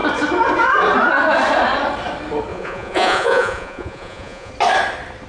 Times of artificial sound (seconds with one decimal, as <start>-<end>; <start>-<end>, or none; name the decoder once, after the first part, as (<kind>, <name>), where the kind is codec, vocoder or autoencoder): 2.5-4.5 (vocoder, Vocos)